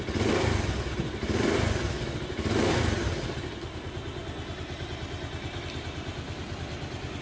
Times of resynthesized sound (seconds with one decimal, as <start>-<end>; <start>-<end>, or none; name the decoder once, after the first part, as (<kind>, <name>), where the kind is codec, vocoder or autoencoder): none

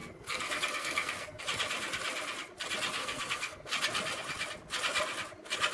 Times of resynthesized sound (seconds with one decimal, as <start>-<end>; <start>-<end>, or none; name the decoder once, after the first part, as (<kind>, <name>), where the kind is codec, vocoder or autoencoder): 0.0-1.4 (codec, SNAC); 3.0-3.7

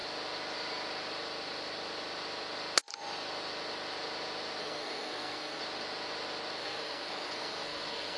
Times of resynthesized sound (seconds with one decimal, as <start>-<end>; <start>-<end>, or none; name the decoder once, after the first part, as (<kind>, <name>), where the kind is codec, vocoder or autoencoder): 4.6-5.6 (codec, SNAC); 6.6-8.2

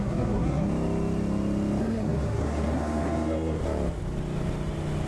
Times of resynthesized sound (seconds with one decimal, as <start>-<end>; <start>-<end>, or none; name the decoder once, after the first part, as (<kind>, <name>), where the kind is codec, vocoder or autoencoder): 0.0-0.7 (codec, SNAC); 1.8-3.6

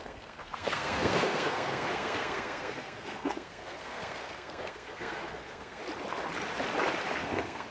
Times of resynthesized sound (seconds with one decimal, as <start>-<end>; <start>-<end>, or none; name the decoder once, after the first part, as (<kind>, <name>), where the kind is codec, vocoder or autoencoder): 0.0-5.8 (codec, SNAC); 7.2-7.7

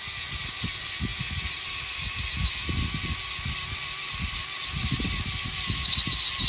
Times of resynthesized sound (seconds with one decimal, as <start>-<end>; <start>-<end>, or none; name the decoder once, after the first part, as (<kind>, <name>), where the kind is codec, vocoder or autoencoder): none